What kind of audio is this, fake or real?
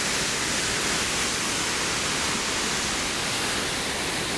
real